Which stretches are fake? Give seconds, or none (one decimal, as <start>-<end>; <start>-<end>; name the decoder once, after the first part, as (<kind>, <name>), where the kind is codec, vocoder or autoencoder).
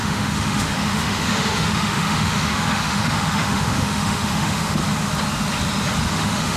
0.0-4.8 (autoencoder, DAC-VAE); 6.1-6.6